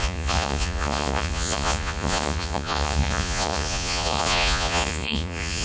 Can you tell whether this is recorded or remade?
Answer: remade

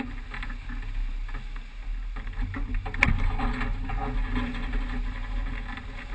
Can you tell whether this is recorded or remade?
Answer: recorded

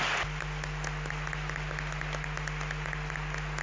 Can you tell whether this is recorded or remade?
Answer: recorded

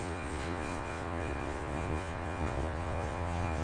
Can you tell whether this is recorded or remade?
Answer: remade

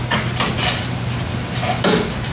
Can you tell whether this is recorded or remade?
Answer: recorded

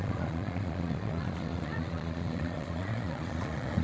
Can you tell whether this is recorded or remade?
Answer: remade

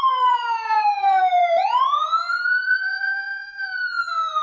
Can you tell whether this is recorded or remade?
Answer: remade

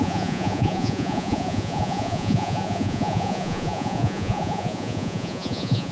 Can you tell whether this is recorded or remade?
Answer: remade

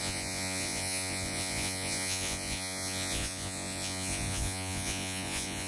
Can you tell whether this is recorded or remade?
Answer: remade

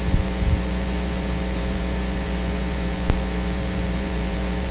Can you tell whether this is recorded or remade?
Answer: remade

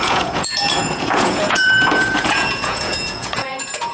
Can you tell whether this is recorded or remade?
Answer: remade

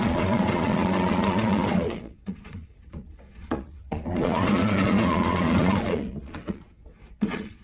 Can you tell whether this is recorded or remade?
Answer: remade